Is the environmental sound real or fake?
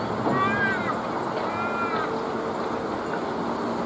real